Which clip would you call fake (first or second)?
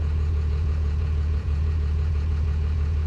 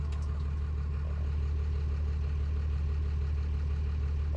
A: first